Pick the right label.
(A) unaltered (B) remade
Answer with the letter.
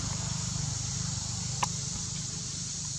B